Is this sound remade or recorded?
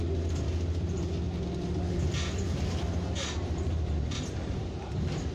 recorded